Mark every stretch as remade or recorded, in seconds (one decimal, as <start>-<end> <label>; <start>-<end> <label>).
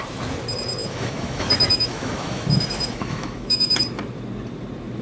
0.0-0.8 recorded; 0.8-3.8 remade; 3.8-5.0 recorded